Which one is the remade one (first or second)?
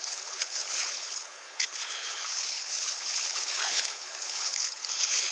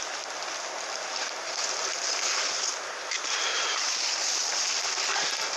first